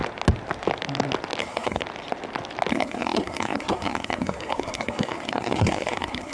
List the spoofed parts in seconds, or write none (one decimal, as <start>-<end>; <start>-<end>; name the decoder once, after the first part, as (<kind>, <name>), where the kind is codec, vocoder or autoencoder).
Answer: 1.4-1.8 (codec, SNAC); 2.7-6.3